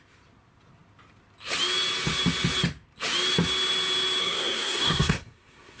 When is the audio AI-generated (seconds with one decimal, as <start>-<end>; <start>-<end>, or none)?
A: 4.2-5.8